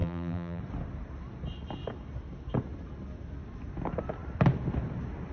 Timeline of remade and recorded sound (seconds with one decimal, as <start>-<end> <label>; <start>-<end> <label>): 0.0-0.6 remade; 0.6-5.3 recorded

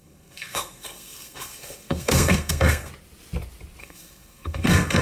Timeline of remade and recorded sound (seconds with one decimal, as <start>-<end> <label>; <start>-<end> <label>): 0.0-2.9 remade; 2.9-3.8 recorded; 3.8-5.0 remade

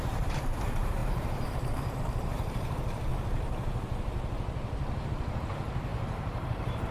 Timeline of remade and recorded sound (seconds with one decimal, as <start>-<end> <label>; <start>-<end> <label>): 0.0-3.1 remade; 3.1-5.1 recorded; 5.1-6.9 remade

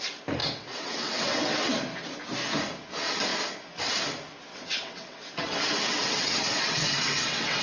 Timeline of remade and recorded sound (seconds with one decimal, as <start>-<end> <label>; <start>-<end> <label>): 0.0-0.4 recorded; 0.4-1.7 remade; 1.7-4.5 recorded; 4.5-7.6 remade